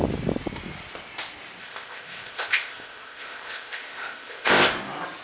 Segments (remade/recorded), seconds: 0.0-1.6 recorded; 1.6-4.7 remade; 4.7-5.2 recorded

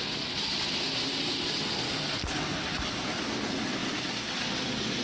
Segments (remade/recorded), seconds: 0.0-5.0 recorded

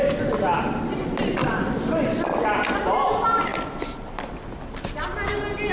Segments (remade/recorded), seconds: 0.0-5.7 recorded